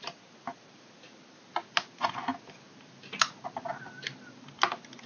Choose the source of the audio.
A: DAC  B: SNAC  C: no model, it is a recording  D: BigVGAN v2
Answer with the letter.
C